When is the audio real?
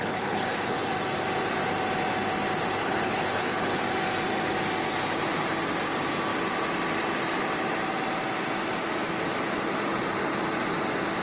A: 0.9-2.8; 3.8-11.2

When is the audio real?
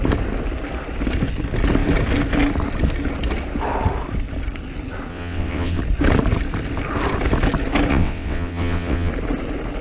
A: 0.0-5.1; 5.8-7.9; 9.1-9.8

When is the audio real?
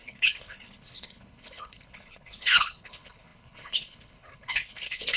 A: none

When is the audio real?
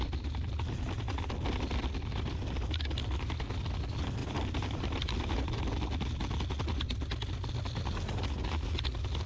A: 0.0-4.2; 5.6-9.3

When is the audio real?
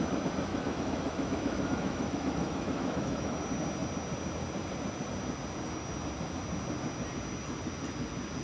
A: 0.0-0.5; 3.4-8.4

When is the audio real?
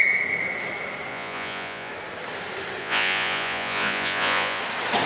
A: 0.0-1.1; 1.9-2.8; 4.6-5.1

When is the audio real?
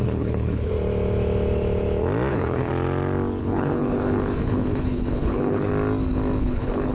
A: 0.7-2.3; 2.7-3.4; 5.7-6.4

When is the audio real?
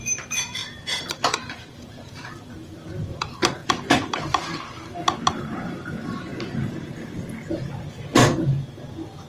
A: 0.0-0.6; 2.5-3.6; 4.2-6.3; 7.1-9.3